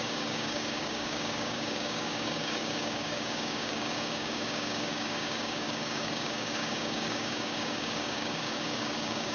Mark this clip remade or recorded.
remade